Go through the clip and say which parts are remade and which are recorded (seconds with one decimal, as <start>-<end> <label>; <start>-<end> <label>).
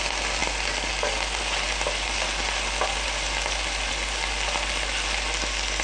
0.0-5.8 recorded